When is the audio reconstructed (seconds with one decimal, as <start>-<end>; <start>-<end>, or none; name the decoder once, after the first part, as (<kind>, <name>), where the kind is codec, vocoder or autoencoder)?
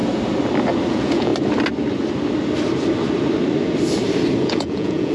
0.9-1.3 (vocoder, Vocos); 4.4-5.1